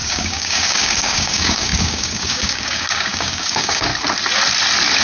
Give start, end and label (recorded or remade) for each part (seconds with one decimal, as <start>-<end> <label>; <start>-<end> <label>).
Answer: 0.0-3.9 remade; 3.9-5.0 recorded